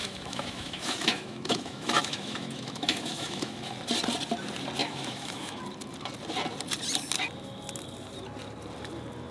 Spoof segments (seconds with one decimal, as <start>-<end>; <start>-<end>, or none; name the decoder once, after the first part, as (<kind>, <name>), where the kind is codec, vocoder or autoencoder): 0.0-3.7 (autoencoder, DAC-VAE); 4.8-5.6